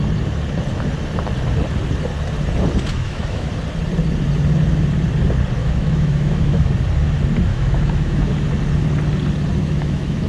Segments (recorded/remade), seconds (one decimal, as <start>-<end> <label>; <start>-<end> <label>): 0.0-2.9 recorded; 2.9-3.5 remade; 3.5-5.6 recorded; 5.6-6.7 remade; 6.7-7.5 recorded; 7.5-8.3 remade; 8.3-9.6 recorded; 9.6-10.3 remade